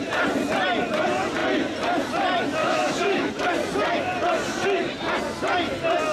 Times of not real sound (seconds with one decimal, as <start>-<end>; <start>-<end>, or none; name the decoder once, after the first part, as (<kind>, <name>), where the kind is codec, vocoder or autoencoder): 2.6-3.3 (autoencoder, DAC-VAE)